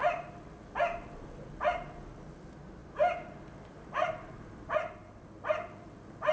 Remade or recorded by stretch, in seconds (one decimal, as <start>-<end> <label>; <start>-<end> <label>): 0.0-6.3 recorded